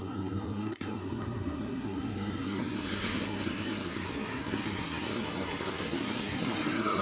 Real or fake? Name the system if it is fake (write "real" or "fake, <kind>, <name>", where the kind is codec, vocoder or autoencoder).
fake, codec, SNAC